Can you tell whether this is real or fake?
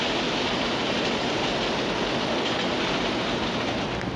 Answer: real